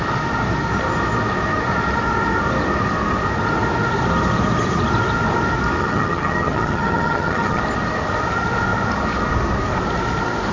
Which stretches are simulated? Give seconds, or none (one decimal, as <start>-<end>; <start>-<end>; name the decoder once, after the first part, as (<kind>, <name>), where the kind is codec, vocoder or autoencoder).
5.8-7.6 (vocoder, HiFi-GAN)